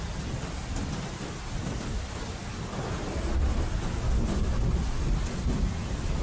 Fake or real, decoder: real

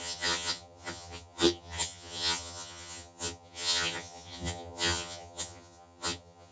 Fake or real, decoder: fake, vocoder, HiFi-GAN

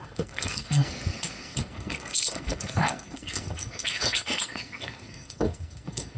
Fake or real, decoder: fake, codec, SNAC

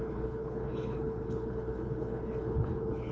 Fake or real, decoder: fake, codec, HILCodec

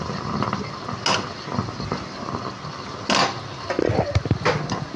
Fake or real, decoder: real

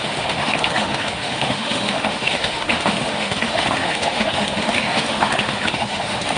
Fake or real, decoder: fake, autoencoder, DAC-VAE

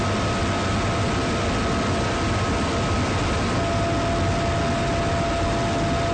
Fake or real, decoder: real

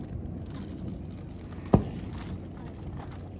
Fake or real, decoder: real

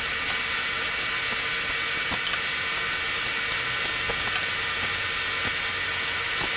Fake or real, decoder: real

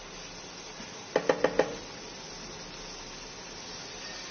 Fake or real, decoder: real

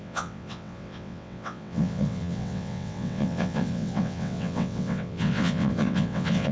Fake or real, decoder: fake, vocoder, WaveNeXt